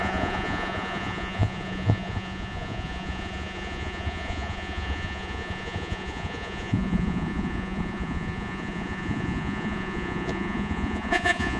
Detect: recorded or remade remade